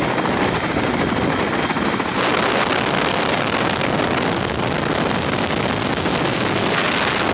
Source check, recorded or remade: recorded